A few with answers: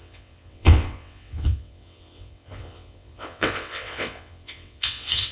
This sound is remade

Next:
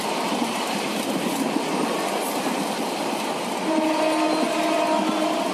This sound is recorded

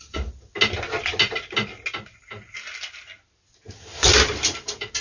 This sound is recorded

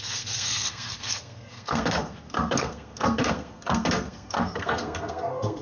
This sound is remade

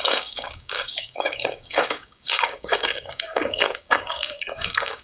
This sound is remade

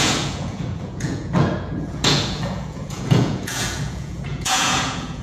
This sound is remade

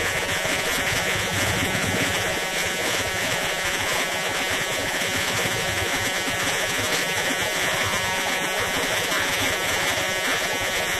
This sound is remade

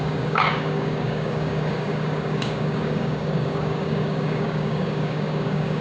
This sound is remade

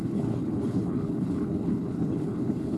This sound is remade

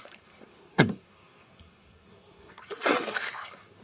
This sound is remade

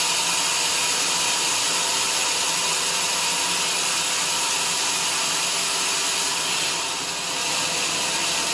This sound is recorded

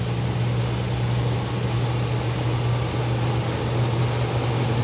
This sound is recorded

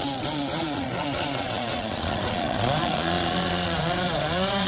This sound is remade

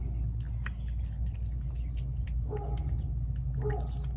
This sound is recorded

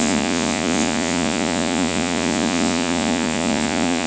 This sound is remade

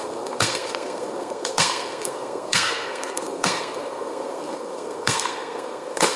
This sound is remade